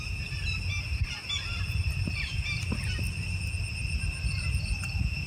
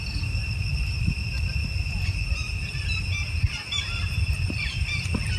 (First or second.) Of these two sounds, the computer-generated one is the second